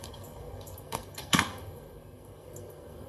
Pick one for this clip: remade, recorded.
remade